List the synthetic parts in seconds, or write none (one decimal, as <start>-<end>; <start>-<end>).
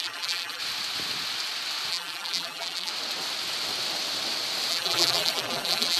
0.0-0.6; 1.9-2.9; 4.7-6.0